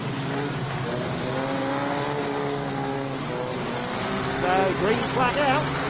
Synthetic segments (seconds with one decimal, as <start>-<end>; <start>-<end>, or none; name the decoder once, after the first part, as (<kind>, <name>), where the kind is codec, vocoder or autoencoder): none